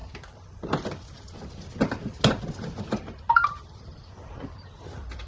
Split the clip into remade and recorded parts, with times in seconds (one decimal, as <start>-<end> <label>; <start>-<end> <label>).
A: 0.0-5.3 recorded